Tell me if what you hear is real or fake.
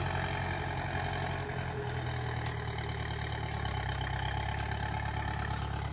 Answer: real